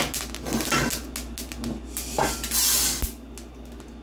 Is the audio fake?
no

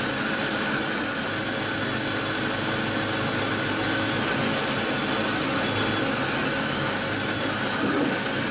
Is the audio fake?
no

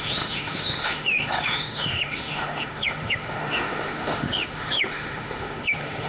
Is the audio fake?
yes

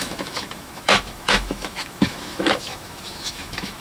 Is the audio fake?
yes